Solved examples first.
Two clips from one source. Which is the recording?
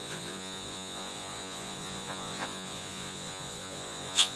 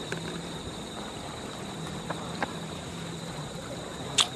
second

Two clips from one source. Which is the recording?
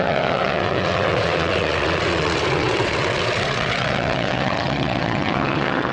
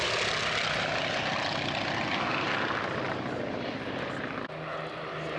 second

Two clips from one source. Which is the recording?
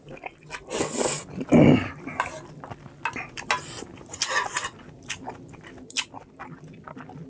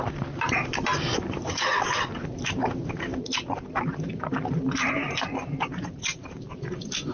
first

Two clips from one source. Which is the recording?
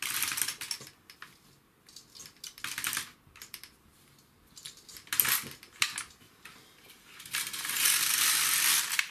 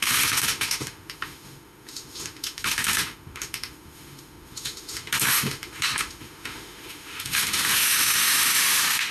first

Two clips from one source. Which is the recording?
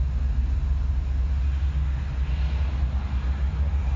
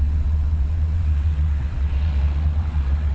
first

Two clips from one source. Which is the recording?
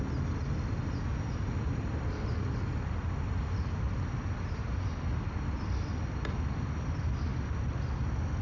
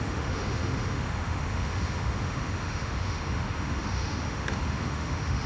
first